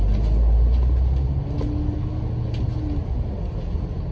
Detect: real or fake real